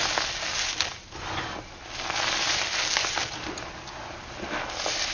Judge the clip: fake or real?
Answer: real